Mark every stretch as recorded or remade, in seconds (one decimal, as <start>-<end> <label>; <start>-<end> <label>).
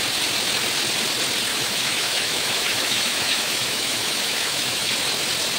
0.0-1.5 recorded; 1.5-4.9 remade; 4.9-5.6 recorded